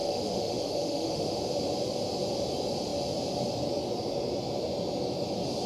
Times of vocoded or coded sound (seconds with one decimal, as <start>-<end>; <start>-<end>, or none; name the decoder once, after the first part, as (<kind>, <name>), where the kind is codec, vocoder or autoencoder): 0.0-1.4 (autoencoder, DAC-VAE)